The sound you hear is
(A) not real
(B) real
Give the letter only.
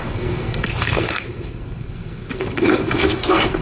A